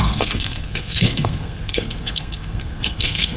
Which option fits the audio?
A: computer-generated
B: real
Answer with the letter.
A